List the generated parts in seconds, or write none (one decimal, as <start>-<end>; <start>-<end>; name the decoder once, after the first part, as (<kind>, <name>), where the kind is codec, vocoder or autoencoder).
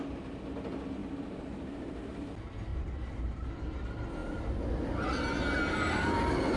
1.0-2.1 (vocoder, BigVGAN v2); 2.7-3.5